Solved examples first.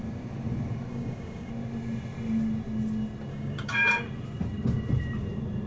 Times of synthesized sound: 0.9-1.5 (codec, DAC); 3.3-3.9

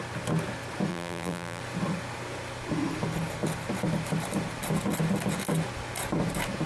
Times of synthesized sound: 0.9-1.6 (vocoder, BigVGAN v2)

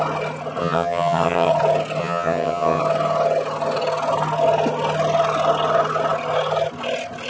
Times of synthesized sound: 0.6-1.5 (vocoder, HiFi-GAN); 2.0-2.8

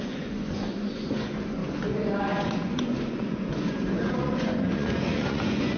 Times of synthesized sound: 0.0-5.8 (vocoder, Vocos)

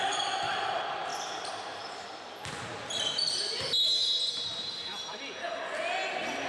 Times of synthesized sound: none

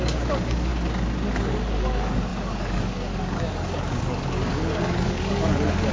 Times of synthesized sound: 0.0-0.7 (codec, DAC); 1.3-5.9

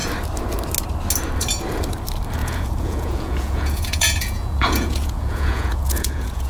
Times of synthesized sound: 2.4-6.5 (vocoder, Vocos)